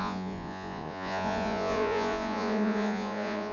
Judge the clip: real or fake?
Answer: fake